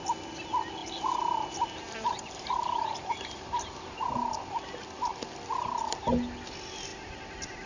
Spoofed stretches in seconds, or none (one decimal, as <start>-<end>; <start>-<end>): 0.8-4.1